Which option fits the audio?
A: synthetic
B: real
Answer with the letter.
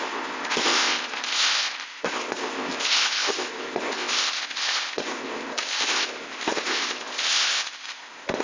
A